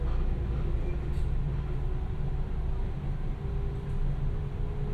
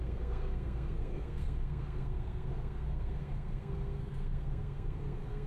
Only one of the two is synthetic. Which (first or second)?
second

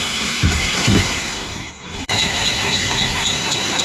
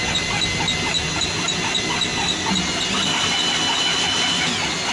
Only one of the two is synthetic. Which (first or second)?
first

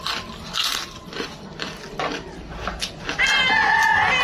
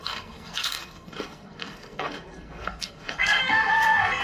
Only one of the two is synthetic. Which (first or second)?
second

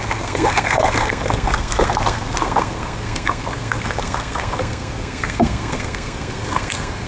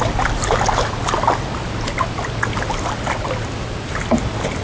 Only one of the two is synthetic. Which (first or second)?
first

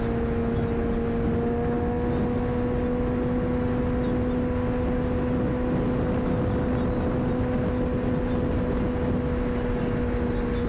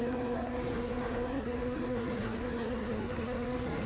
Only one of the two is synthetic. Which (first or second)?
second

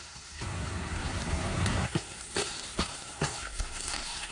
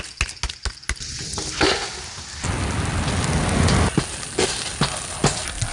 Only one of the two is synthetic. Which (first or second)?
first